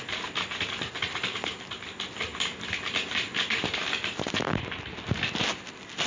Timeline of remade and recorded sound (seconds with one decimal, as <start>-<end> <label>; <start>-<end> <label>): 0.0-6.1 recorded

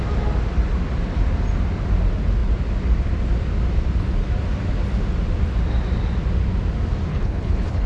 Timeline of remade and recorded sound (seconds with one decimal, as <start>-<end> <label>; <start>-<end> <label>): 0.0-7.1 recorded; 7.1-7.9 remade

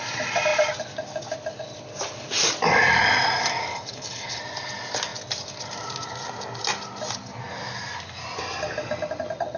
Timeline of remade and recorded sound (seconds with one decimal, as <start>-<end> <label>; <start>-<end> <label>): 0.0-3.7 recorded; 3.7-4.4 remade; 4.4-9.6 recorded